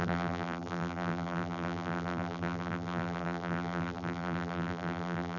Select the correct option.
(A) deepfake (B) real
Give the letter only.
A